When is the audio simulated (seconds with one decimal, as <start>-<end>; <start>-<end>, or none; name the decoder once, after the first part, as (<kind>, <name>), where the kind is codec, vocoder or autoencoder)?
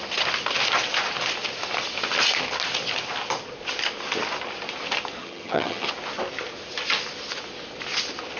5.2-5.9 (vocoder, HiFi-GAN)